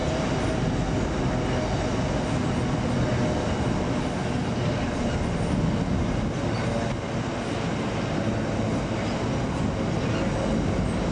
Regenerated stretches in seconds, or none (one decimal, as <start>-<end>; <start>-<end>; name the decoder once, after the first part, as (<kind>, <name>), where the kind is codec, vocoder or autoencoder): none